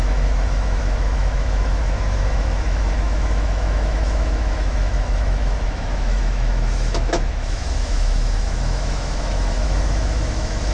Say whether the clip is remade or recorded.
remade